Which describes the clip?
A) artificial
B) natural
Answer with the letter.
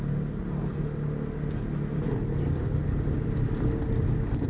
B